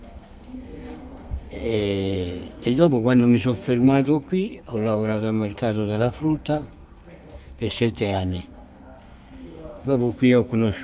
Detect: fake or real fake